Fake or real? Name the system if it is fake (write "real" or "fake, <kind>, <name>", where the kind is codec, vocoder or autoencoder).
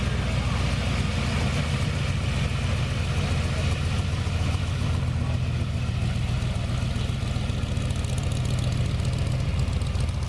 real